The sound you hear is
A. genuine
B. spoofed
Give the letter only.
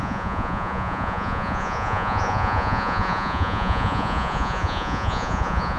B